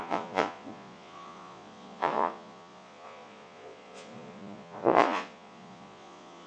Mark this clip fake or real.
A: fake